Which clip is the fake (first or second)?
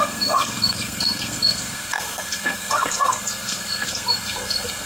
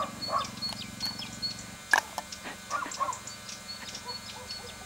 first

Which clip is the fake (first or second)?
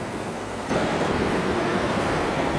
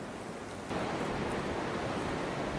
first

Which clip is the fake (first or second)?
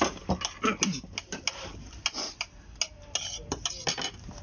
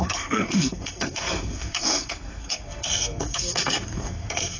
second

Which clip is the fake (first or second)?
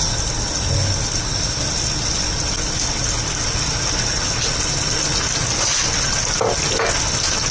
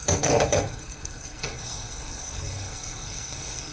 second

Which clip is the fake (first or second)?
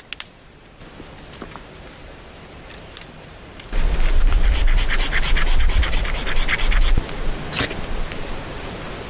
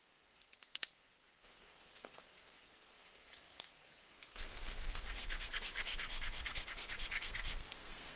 second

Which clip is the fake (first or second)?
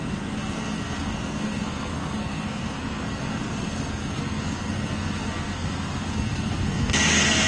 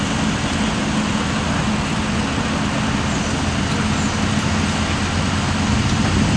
first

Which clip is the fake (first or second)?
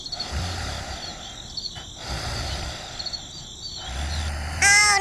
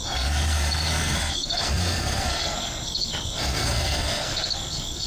second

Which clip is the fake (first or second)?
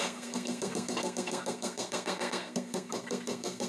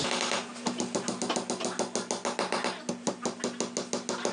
first